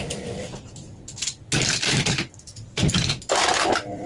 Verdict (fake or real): real